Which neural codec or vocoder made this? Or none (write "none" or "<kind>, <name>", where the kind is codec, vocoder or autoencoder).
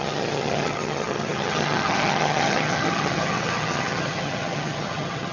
vocoder, HiFi-GAN